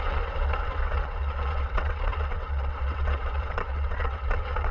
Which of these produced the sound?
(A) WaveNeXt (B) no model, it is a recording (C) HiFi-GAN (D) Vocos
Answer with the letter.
A